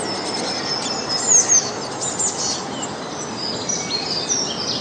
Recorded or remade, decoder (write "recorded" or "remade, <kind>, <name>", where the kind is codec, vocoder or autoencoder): recorded